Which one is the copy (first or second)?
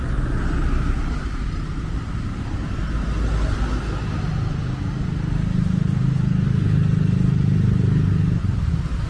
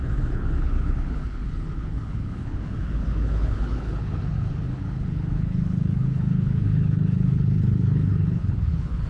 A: second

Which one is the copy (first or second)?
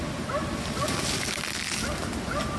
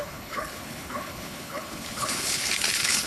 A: second